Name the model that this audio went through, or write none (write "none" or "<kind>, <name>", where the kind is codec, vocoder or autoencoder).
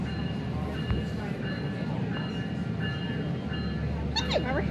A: none